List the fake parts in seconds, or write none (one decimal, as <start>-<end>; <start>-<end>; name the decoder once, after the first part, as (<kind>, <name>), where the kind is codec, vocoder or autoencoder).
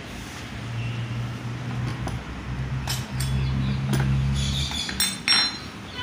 none